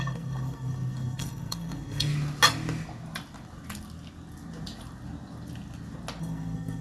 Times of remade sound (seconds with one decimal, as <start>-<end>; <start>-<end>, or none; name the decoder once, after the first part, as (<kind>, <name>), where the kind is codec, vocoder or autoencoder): 0.0-2.1 (codec, SNAC); 6.2-6.8